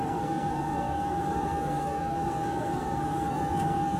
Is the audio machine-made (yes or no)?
yes